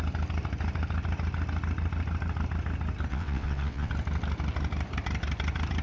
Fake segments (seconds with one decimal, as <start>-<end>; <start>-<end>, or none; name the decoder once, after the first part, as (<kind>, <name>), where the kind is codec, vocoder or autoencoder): 3.1-3.9 (vocoder, WaveNeXt)